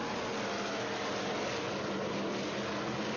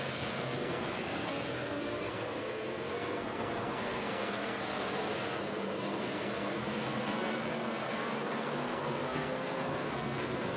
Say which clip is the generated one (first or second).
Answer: second